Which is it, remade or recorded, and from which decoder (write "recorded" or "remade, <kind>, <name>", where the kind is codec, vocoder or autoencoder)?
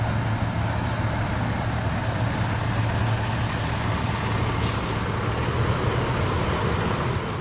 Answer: recorded